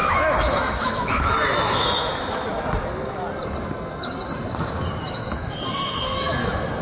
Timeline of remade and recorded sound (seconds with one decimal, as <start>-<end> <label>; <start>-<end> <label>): 0.0-2.5 remade; 2.5-5.0 recorded; 5.0-6.8 remade